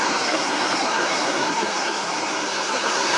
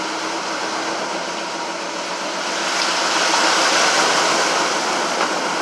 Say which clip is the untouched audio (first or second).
second